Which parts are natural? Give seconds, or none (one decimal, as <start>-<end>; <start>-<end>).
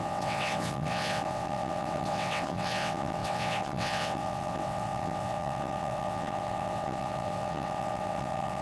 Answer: none